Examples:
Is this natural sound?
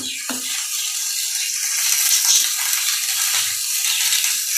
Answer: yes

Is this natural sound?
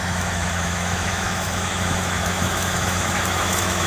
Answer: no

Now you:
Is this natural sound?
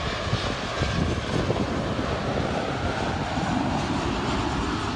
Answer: yes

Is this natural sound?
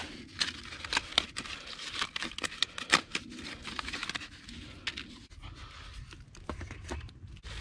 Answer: yes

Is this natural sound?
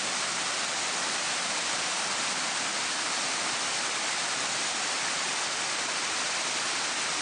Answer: yes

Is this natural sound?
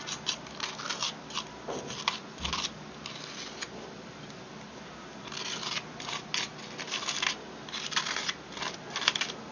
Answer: yes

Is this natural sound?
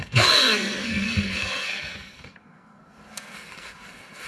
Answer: no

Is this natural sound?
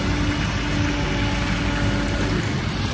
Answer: yes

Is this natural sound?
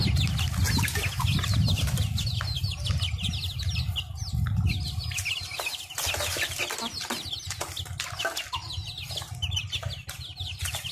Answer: yes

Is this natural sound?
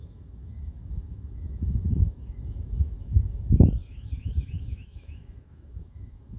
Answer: no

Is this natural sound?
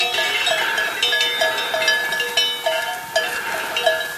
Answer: yes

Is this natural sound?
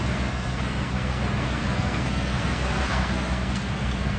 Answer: no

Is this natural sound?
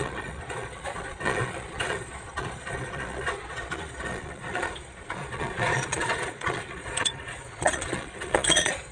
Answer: no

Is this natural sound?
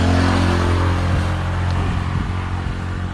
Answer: yes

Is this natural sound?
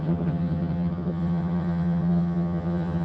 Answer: no